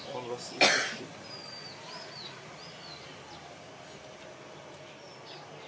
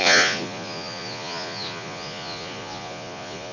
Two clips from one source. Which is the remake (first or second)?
second